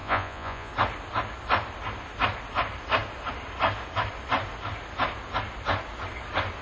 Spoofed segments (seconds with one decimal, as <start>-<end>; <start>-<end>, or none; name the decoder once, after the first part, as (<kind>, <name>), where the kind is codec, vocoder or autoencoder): 0.0-0.7 (vocoder, Vocos)